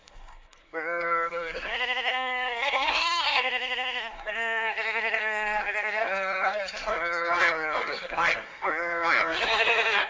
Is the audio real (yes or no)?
no